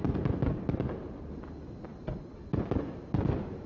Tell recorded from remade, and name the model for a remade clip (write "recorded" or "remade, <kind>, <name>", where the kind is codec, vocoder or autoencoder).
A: recorded